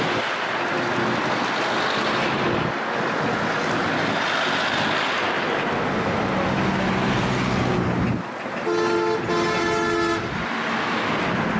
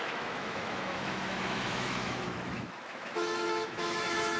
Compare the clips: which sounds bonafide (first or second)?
first